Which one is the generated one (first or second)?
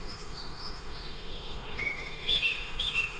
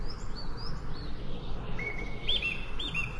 first